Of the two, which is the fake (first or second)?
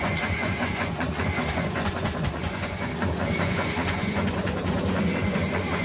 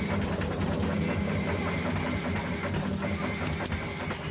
first